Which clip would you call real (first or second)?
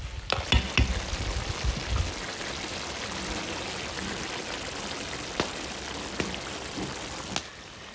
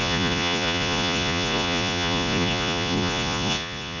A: first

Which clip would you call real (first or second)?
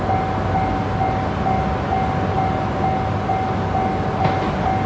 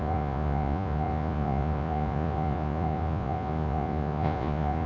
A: first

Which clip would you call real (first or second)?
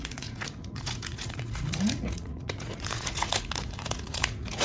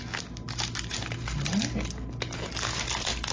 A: second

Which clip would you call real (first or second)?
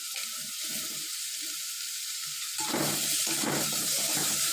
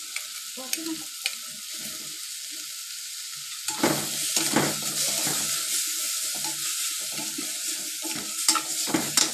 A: second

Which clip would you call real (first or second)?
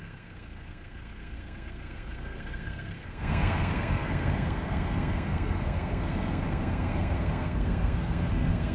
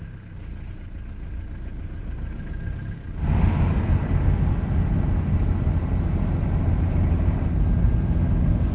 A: second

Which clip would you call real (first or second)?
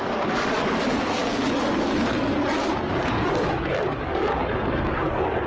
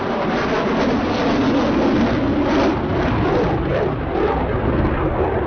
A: second